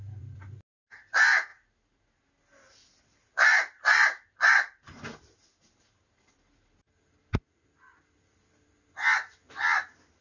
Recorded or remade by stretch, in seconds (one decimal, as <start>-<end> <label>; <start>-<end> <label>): 0.0-10.2 recorded